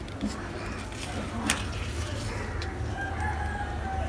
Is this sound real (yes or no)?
yes